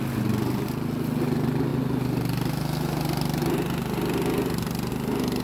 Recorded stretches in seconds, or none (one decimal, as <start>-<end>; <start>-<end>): 0.0-5.4